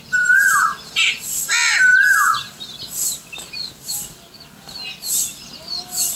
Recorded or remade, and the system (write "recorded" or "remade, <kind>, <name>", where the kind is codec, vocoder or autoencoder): recorded